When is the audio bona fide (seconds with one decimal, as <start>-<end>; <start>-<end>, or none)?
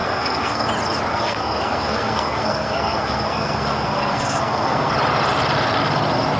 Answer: 0.7-1.1; 4.9-6.4